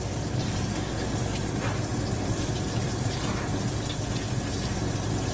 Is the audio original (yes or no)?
yes